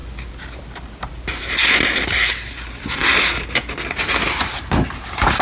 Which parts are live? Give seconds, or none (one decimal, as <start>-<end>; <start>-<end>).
0.0-5.4